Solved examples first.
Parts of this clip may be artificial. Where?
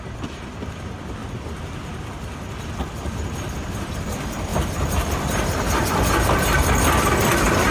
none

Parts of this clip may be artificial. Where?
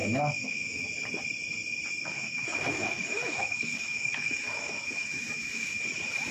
0.0-0.9 (autoencoder, DAC-VAE); 2.0-5.8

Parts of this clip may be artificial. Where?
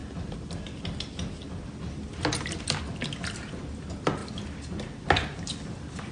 none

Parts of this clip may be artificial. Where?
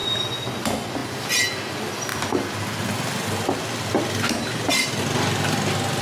none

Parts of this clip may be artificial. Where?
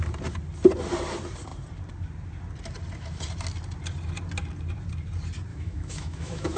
5.5-6.6 (autoencoder, DAC-VAE)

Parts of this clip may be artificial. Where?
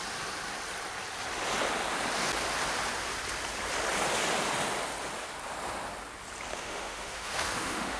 6.5-8.0 (autoencoder, DAC-VAE)